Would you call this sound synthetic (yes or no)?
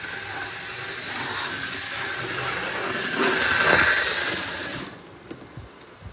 no